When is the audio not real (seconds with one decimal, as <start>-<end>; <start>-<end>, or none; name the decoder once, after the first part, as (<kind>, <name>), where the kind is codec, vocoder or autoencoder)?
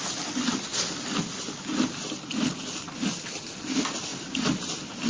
none